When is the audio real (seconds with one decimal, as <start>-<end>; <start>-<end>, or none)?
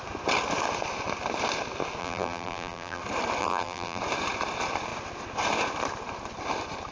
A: 0.0-2.0; 3.0-3.4; 4.0-6.9